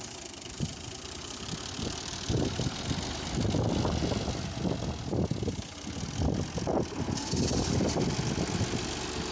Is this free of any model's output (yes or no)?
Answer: yes